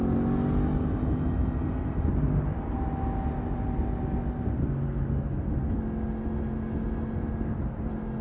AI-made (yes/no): no